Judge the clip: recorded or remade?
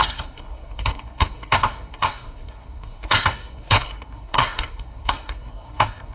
remade